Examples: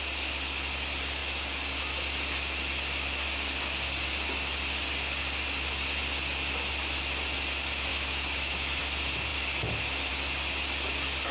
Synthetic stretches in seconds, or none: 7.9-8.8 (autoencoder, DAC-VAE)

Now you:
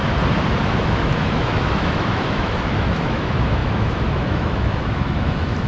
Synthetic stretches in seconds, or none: 0.6-5.7 (autoencoder, DAC-VAE)

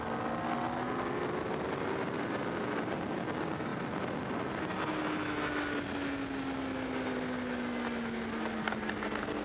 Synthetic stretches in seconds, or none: none

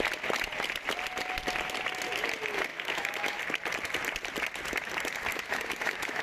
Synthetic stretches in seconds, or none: 2.7-3.4 (autoencoder, DAC-VAE); 5.3-6.2

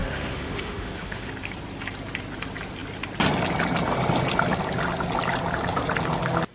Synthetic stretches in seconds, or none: 0.0-1.3 (autoencoder, DAC-VAE)

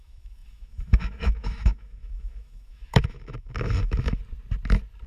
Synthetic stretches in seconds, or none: 0.0-4.2 (autoencoder, DAC-VAE)

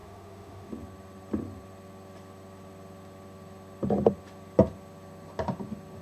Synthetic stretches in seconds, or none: 0.0-0.7 (autoencoder, DAC-VAE)